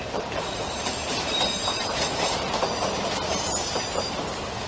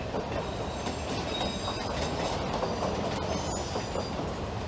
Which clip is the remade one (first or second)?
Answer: first